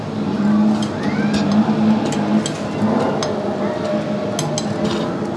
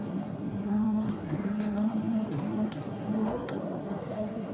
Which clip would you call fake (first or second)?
second